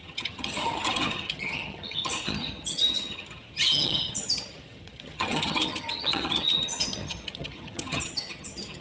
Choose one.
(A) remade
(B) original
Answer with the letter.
A